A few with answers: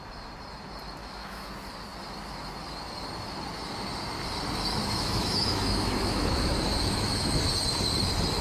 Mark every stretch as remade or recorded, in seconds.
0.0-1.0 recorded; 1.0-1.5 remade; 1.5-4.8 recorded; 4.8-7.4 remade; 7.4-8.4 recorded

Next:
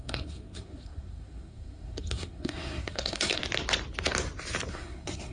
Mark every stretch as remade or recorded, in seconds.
0.0-3.4 remade; 3.4-4.7 recorded; 4.7-5.3 remade

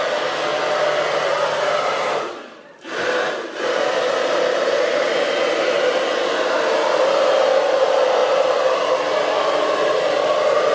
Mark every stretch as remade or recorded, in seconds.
0.0-10.7 recorded

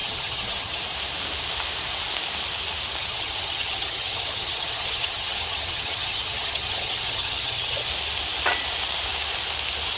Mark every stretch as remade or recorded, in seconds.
0.0-0.8 remade; 0.8-3.0 recorded; 3.0-7.9 remade; 7.9-10.0 recorded